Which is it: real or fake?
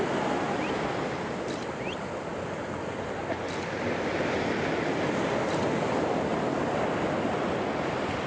real